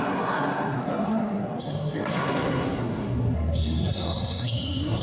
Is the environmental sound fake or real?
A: fake